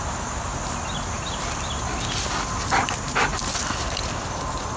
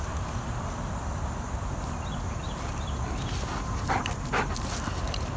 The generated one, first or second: second